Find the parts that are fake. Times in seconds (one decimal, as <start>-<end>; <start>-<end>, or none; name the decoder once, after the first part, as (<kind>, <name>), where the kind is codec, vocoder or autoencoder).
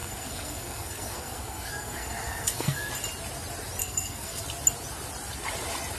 0.0-2.9 (codec, SNAC); 3.8-4.4